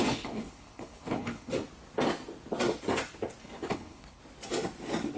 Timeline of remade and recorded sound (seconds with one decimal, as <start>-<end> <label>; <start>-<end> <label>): 0.0-1.5 remade; 1.5-3.4 recorded; 3.4-4.2 remade; 4.2-5.2 recorded